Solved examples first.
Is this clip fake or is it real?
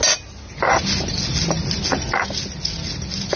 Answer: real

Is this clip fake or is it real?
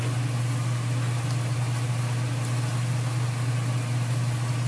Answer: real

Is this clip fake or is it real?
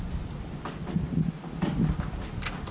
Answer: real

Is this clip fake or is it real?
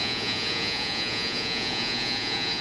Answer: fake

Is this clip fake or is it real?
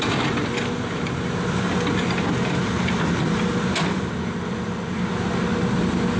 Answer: real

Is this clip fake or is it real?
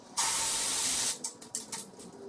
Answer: real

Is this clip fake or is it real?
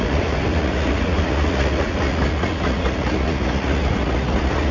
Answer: fake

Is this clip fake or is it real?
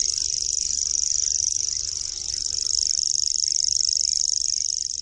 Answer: real